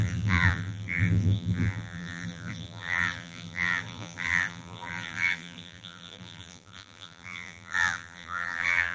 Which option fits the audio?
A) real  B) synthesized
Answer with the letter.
B